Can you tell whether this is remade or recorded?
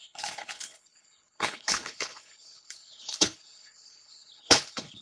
remade